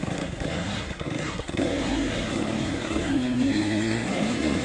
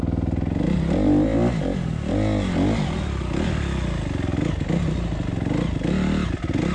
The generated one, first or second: first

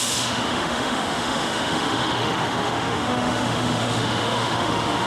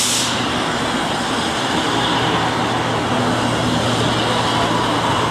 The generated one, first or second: first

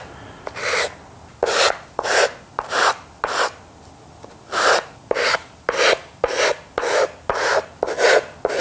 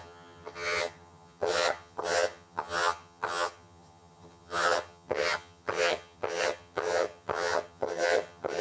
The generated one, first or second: second